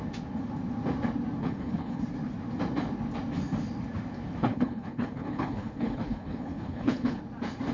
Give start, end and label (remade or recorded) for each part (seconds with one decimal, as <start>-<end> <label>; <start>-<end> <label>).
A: 0.0-1.4 recorded; 1.4-2.0 remade; 2.0-4.4 recorded; 4.4-7.2 remade; 7.2-7.7 recorded